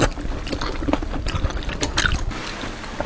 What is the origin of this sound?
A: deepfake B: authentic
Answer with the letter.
B